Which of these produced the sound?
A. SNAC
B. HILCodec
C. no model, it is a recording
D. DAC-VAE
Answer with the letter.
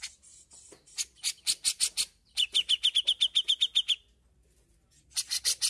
C